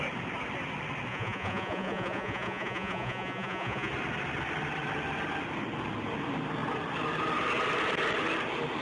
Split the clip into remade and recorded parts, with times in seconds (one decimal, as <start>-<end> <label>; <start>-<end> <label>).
0.0-1.1 recorded; 1.1-3.9 remade; 3.9-8.8 recorded